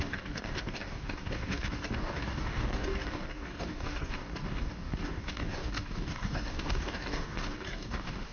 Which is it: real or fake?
fake